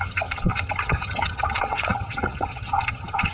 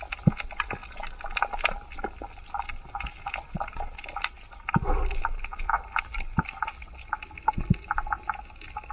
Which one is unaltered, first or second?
second